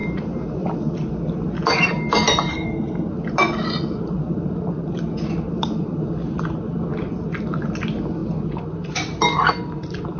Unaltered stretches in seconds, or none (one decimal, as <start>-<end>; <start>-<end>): 0.0-2.5; 3.1-10.2